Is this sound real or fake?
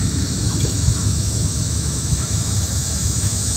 fake